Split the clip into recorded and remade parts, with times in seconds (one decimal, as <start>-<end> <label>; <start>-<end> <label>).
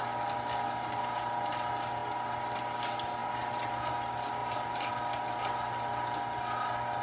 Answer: 0.0-4.4 recorded; 4.4-4.9 remade; 4.9-7.0 recorded